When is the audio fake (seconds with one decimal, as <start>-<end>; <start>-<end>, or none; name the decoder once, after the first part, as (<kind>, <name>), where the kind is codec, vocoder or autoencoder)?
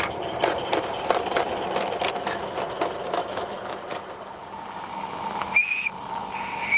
3.2-3.8 (autoencoder, DAC-VAE)